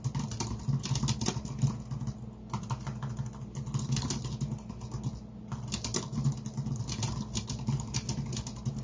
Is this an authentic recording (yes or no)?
yes